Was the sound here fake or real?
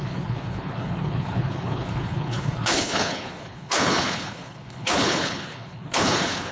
fake